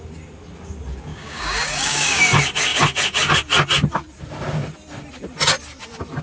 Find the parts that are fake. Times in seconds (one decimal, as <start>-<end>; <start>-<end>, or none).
1.1-2.2